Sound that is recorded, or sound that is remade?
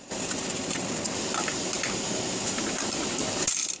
recorded